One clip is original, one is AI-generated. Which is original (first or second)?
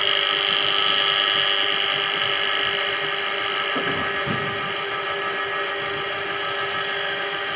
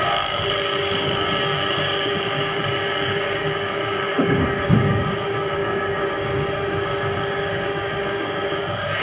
first